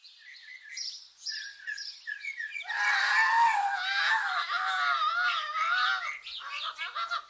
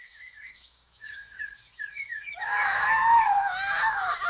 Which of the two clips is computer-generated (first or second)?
second